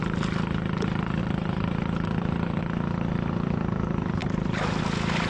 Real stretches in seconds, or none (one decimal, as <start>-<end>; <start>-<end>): 0.0-1.2; 2.6-5.3